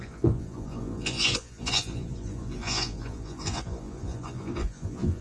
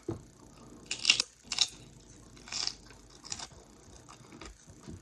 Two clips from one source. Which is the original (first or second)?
second